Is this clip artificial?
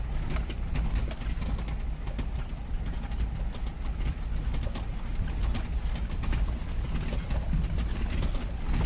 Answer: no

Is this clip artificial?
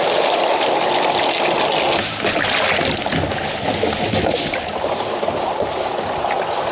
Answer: no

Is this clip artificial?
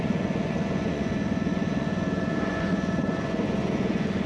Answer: yes